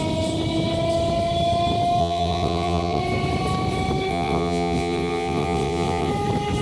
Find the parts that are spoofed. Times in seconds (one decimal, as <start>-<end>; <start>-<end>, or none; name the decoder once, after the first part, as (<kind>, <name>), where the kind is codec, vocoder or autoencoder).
2.0-3.0 (vocoder, WaveNeXt); 4.1-6.1